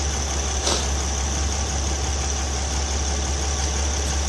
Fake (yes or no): no